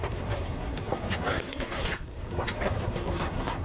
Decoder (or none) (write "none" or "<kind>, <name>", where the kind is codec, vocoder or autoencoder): codec, SNAC